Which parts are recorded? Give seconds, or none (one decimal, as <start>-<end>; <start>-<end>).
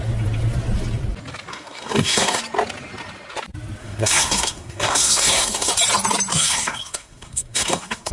0.0-1.5; 2.4-3.8; 5.7-6.3